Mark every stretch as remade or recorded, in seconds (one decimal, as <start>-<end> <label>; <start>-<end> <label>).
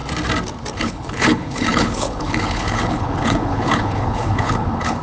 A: 0.0-0.8 recorded; 0.8-5.0 remade